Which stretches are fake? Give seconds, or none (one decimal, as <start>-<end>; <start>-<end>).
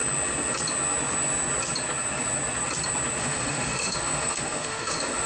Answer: 3.2-5.3